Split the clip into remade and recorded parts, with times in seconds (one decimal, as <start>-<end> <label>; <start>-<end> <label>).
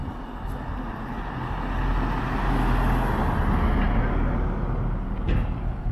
0.0-5.9 recorded